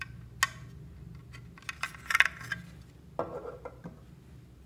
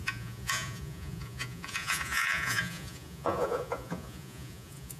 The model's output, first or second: second